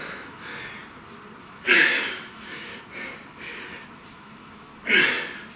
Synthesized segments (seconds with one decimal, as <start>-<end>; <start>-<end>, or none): 0.0-0.5; 1.4-2.7; 4.0-4.7